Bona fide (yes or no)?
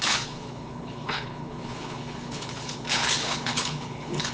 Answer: no